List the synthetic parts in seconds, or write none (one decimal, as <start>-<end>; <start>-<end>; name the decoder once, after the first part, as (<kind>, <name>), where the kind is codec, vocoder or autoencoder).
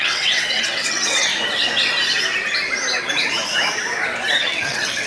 0.0-1.3 (vocoder, WaveNeXt); 4.4-5.1